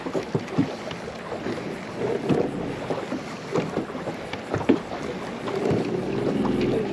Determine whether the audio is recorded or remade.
recorded